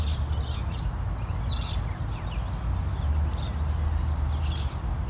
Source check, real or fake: real